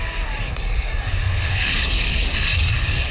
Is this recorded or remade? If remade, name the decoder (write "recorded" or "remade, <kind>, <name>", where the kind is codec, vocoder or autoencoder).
remade, codec, DAC